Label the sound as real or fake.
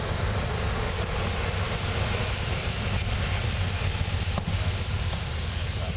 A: fake